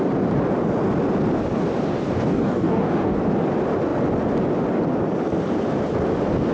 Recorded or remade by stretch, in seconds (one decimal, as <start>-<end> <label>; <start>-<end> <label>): 0.0-1.9 recorded; 1.9-3.2 remade; 3.2-6.5 recorded